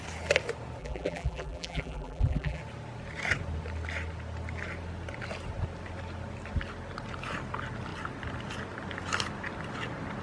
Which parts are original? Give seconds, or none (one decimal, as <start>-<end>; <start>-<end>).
0.0-0.8; 2.6-10.2